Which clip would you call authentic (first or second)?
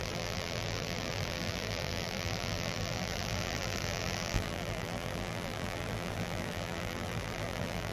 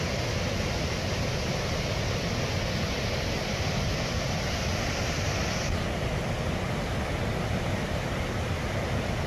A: second